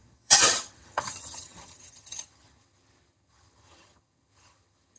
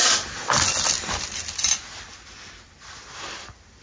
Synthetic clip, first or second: first